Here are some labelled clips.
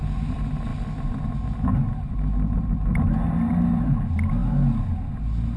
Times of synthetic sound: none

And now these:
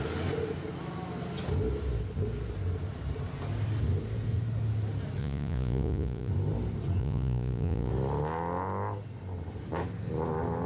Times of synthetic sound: 5.2-6.3 (vocoder, Vocos); 7.0-7.9